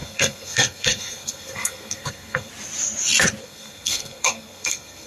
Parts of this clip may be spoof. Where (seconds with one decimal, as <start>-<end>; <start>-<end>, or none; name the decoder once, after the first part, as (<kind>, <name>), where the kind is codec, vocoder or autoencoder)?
0.0-2.5 (codec, SNAC); 3.4-5.1